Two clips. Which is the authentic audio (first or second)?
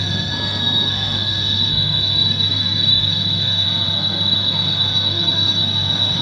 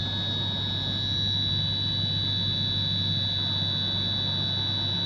second